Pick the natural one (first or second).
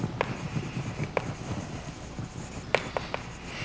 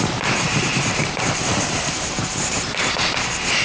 first